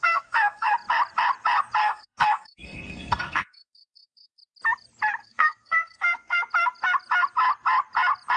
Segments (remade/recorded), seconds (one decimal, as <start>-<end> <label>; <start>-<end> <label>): 0.0-0.7 remade; 0.7-1.8 recorded; 1.8-4.4 remade; 4.4-5.2 recorded; 5.2-6.5 remade; 6.5-8.4 recorded